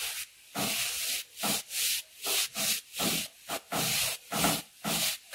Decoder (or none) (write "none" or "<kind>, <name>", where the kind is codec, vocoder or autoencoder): none